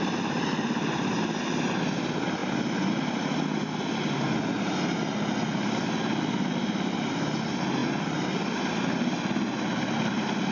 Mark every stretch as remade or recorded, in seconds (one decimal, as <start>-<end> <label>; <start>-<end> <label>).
0.0-2.4 recorded; 2.4-2.9 remade; 2.9-10.5 recorded